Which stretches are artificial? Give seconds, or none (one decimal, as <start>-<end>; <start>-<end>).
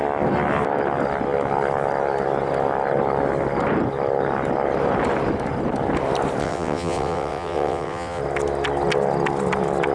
6.4-8.2